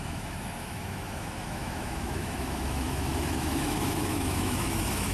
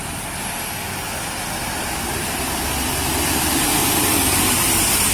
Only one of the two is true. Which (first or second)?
second